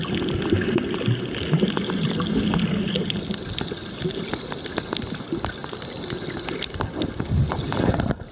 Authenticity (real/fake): real